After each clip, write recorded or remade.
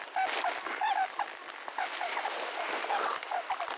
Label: recorded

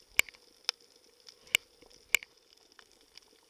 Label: recorded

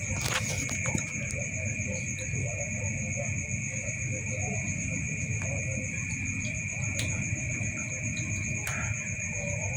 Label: recorded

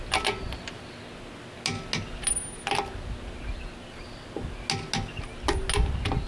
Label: recorded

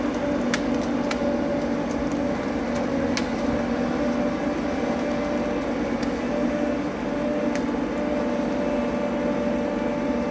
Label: recorded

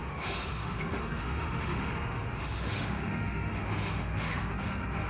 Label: remade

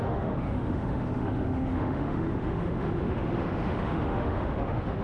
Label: remade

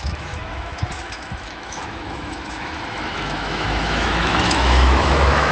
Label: remade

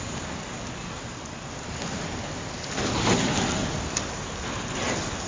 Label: recorded